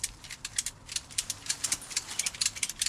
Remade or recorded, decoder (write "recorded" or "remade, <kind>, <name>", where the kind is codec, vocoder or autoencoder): recorded